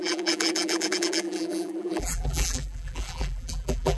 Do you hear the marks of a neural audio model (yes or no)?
yes